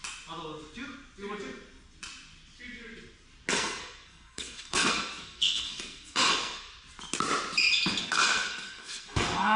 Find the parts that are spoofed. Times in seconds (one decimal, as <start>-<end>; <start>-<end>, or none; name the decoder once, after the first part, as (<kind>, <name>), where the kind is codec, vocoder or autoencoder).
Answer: 3.5-6.7 (codec, SNAC); 8.0-9.6